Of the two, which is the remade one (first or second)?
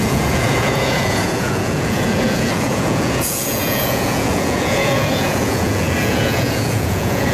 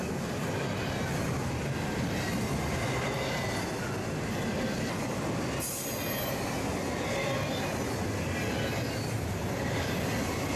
first